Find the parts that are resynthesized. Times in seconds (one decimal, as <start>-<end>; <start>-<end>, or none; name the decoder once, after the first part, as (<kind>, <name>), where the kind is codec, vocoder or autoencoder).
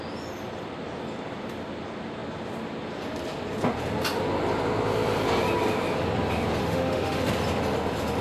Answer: 6.6-7.2 (autoencoder, DAC-VAE)